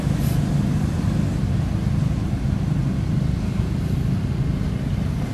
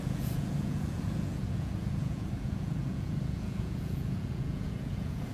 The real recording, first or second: first